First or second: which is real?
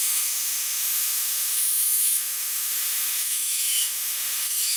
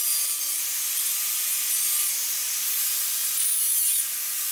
second